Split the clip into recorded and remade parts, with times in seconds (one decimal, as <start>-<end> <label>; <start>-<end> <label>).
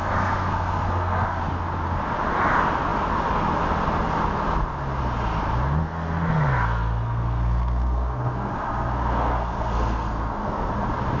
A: 0.0-1.4 remade; 1.4-5.8 recorded; 5.8-10.7 remade; 10.7-11.2 recorded